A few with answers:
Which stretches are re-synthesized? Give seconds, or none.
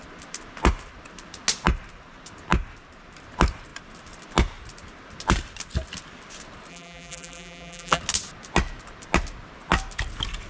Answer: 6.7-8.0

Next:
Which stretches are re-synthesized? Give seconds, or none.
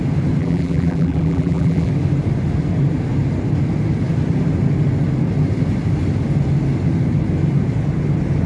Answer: 0.4-1.9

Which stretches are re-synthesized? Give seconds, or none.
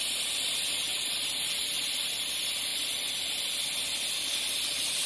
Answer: 0.9-1.9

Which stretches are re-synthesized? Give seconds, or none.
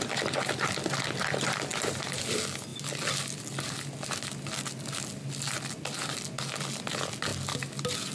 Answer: 1.7-2.2